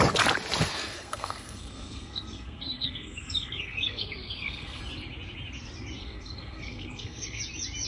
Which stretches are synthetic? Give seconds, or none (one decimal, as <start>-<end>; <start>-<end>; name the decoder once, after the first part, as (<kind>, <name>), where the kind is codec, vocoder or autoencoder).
0.7-4.8 (codec, SNAC); 6.0-7.4